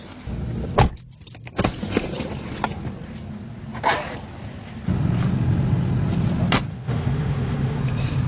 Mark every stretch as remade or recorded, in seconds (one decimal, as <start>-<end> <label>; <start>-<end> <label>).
0.0-6.7 recorded; 6.7-7.8 remade; 7.8-8.3 recorded